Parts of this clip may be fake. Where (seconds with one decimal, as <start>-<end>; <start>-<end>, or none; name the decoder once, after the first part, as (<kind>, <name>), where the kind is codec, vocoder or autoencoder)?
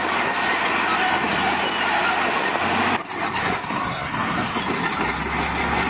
3.4-4.6 (codec, SNAC)